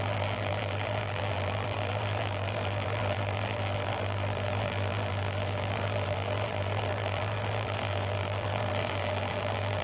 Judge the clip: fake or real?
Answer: fake